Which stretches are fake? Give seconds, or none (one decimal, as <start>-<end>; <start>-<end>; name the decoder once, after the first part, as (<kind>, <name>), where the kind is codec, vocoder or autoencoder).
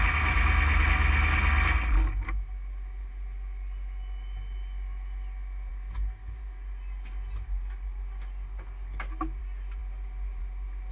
none